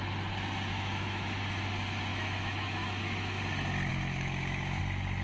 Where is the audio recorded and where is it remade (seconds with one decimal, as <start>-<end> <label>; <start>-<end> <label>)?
0.0-0.7 recorded; 0.7-1.4 remade; 1.4-2.1 recorded; 2.1-3.4 remade; 3.4-3.9 recorded; 3.9-4.8 remade; 4.8-5.2 recorded